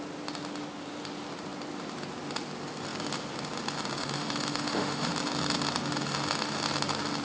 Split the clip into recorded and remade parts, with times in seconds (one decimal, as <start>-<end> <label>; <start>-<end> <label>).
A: 0.0-4.0 recorded; 4.0-5.1 remade; 5.1-7.2 recorded